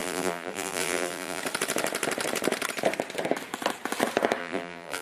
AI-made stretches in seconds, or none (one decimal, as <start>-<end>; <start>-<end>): 0.0-1.4; 4.4-5.0